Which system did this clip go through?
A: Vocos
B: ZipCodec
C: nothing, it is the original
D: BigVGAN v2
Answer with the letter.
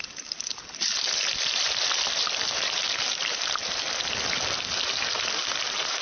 D